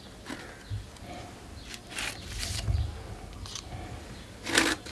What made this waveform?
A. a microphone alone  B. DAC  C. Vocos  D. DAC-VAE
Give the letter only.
A